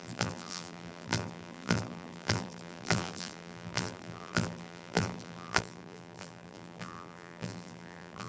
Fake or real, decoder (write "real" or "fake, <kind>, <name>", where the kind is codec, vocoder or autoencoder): fake, vocoder, BigVGAN v2